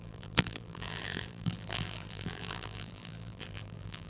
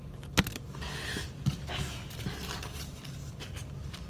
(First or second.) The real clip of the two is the second